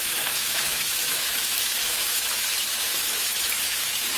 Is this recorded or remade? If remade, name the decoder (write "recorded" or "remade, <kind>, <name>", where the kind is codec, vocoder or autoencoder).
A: remade, autoencoder, DAC-VAE